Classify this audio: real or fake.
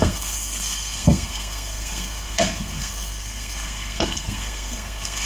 fake